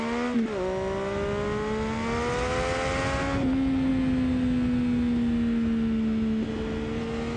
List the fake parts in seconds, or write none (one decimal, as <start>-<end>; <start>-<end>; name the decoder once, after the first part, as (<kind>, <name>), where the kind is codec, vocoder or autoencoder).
none